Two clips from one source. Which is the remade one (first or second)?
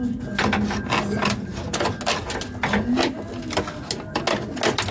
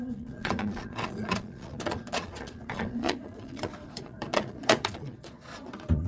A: second